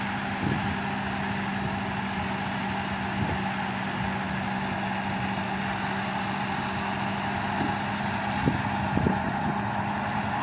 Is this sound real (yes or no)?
yes